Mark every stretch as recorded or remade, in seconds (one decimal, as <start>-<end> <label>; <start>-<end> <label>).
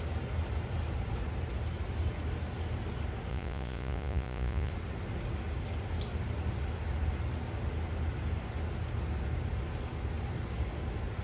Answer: 0.0-3.3 recorded; 3.3-4.7 remade; 4.7-11.2 recorded